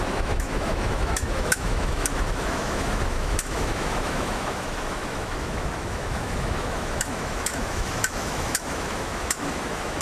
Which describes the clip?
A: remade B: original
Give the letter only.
A